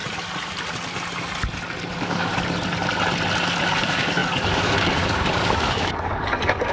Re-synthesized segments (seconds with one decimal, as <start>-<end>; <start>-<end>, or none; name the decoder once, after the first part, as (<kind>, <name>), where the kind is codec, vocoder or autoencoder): 1.9-2.3 (codec, DAC); 3.7-6.7